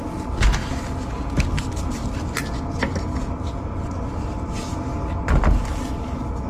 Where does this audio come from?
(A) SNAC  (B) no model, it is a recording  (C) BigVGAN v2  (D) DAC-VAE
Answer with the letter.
B